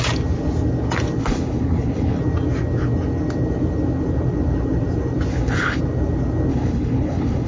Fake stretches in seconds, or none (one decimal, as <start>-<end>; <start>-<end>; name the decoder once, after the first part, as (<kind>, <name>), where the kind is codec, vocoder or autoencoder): 1.2-2.2 (codec, HILCodec); 5.3-5.8; 6.5-7.5